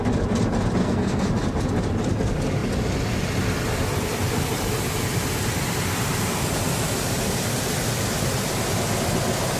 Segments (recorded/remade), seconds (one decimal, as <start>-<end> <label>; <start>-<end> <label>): 0.0-0.8 recorded; 0.8-1.3 remade; 1.3-9.6 recorded